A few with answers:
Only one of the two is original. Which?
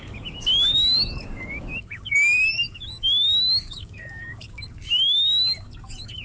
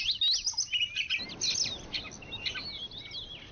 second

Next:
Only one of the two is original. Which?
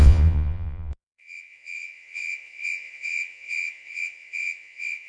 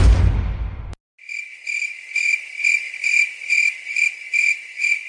second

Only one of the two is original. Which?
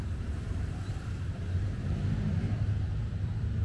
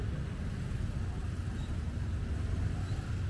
second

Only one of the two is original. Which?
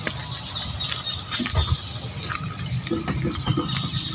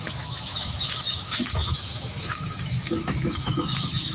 first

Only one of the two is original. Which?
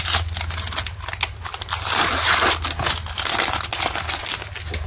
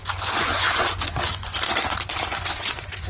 first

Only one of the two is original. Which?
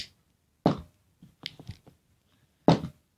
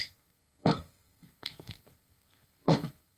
first